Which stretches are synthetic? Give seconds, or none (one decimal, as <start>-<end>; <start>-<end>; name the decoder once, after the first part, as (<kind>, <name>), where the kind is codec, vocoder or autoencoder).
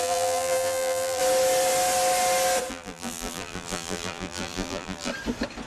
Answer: 0.0-1.2 (vocoder, BigVGAN v2); 2.7-5.1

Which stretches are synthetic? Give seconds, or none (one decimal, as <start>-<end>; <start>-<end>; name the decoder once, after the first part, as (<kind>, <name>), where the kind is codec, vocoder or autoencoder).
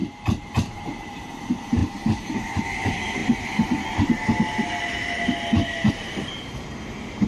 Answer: 0.0-3.2 (vocoder, BigVGAN v2); 5.9-7.3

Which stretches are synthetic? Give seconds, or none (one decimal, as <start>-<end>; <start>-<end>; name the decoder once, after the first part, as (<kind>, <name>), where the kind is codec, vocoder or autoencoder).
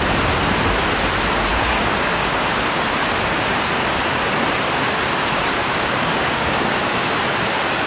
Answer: 1.5-2.8 (codec, DAC); 5.6-7.1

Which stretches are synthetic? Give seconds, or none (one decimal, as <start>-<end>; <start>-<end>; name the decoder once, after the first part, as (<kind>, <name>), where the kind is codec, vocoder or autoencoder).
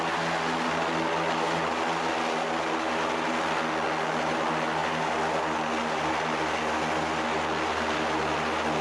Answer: none